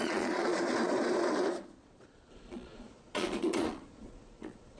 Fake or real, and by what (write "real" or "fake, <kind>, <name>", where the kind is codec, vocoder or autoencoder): fake, vocoder, Vocos